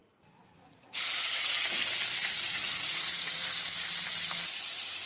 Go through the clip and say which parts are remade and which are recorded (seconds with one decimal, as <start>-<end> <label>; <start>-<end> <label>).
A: 0.0-1.4 remade; 1.4-2.2 recorded; 2.2-3.5 remade; 3.5-5.1 recorded